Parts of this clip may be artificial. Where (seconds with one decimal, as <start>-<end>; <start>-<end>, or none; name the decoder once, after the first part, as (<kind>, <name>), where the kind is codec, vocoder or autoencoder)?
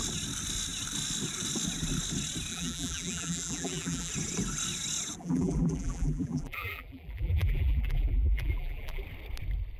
2.5-4.1 (vocoder, BigVGAN v2); 5.2-9.0